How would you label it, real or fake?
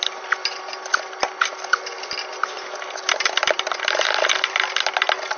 real